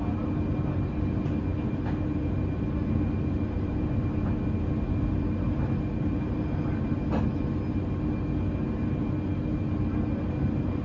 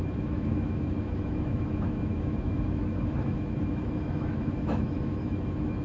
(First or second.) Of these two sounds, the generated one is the second